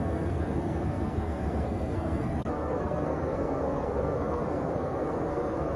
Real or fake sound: fake